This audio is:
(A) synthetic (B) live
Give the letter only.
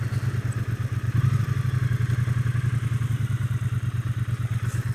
B